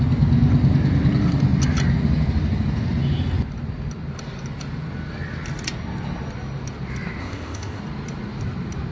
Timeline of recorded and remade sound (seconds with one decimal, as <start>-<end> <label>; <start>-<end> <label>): 0.0-7.2 recorded; 7.2-7.8 remade; 7.8-8.9 recorded